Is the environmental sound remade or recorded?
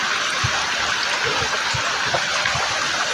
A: recorded